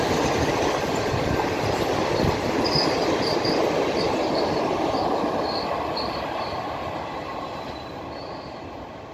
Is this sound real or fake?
real